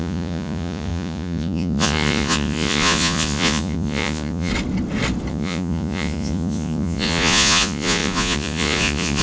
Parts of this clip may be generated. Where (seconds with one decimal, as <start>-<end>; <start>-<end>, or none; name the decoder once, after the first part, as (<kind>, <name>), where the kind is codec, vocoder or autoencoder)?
0.0-4.5 (vocoder, Vocos); 5.3-9.2